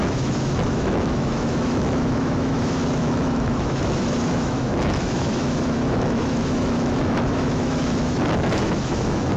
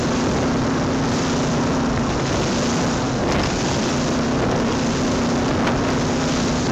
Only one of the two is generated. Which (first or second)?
first